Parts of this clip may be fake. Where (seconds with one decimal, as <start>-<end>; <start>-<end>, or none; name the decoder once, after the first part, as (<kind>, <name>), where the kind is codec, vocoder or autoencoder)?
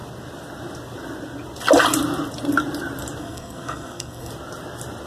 3.2-4.3 (codec, SNAC)